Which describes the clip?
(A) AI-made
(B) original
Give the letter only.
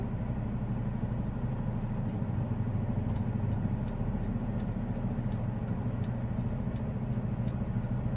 B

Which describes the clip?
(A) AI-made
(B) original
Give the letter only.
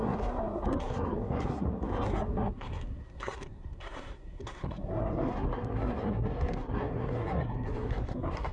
A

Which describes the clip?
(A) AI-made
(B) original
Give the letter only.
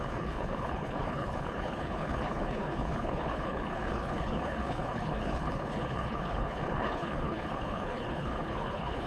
A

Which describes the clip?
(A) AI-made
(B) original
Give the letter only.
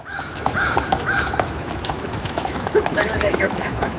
A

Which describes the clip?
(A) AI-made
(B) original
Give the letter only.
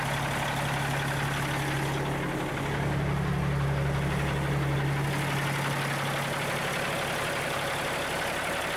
B